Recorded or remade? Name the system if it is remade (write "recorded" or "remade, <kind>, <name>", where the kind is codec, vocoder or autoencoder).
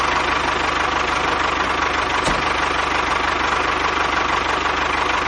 recorded